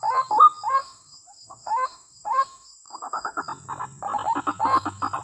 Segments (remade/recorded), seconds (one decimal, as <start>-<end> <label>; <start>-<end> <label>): 0.0-0.8 recorded; 0.8-3.4 remade; 3.4-5.2 recorded